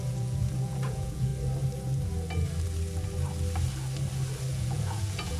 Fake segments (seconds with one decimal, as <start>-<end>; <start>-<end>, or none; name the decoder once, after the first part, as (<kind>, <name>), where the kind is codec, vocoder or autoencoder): 0.0-1.3 (vocoder, Vocos); 4.5-5.4